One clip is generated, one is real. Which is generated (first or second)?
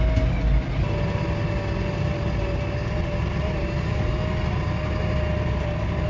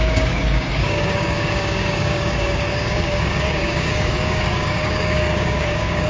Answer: second